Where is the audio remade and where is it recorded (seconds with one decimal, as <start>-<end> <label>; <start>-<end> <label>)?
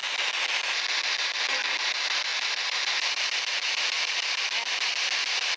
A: 0.0-2.3 recorded; 2.3-4.4 remade; 4.4-5.6 recorded